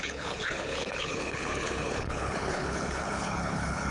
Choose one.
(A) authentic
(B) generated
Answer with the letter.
B